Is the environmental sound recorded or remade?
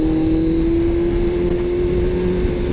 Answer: recorded